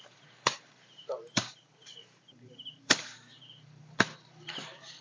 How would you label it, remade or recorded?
remade